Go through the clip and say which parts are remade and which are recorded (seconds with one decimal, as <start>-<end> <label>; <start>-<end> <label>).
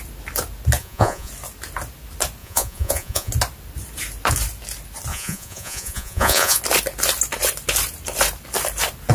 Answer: 0.0-0.8 recorded; 0.8-1.3 remade; 1.3-2.4 recorded; 2.4-3.3 remade; 3.3-5.1 recorded; 5.1-6.6 remade; 6.6-9.1 recorded